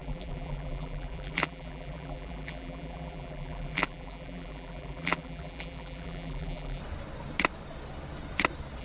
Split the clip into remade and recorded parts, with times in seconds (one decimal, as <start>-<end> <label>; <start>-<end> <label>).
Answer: 0.0-6.8 remade; 6.8-8.8 recorded